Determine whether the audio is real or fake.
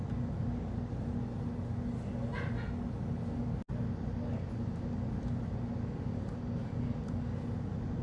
real